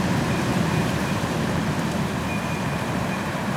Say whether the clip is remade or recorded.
remade